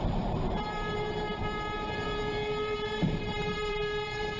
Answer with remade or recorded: remade